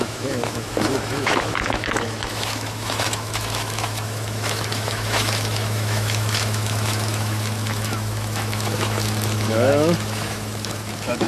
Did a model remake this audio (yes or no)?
yes